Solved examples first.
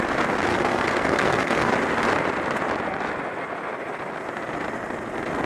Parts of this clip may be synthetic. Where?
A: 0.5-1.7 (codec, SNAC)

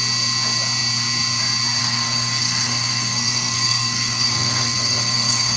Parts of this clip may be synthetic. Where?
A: 1.8-5.6 (codec, SNAC)

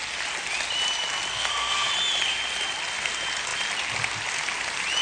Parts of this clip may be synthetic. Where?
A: 1.3-1.9 (codec, SNAC)

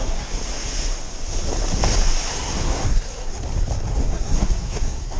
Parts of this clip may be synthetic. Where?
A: 0.0-0.4 (codec, SNAC); 2.3-3.3; 3.9-5.2

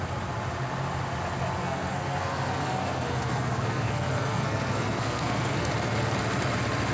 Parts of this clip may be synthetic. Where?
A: 1.6-5.7 (codec, SNAC)

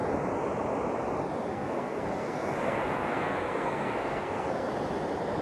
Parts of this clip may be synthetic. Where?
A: 1.5-4.7 (codec, SNAC)

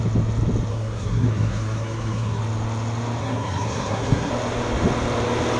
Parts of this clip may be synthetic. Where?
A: 0.7-2.4 (codec, SNAC); 3.2-4.3

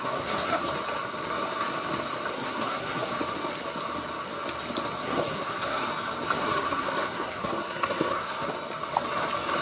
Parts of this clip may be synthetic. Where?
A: 0.0-0.7 (codec, SNAC); 2.3-3.1; 5.0-5.9; 6.4-8.4